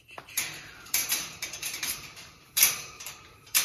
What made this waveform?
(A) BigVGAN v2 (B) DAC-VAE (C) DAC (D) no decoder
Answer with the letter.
A